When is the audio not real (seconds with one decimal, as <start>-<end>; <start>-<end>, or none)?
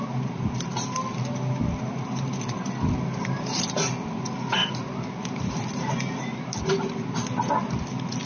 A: none